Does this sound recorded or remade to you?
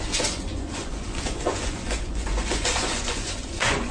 remade